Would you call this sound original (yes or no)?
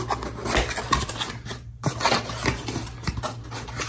yes